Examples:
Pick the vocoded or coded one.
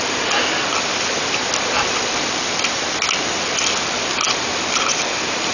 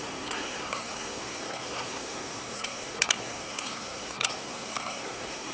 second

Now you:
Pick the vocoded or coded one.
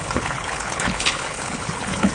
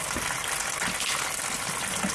first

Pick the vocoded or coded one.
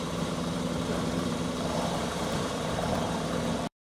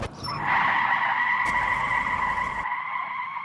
first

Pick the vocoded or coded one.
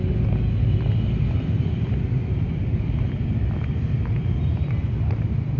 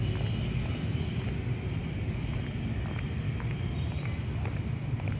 first